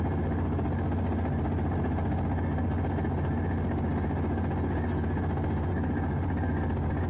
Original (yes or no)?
yes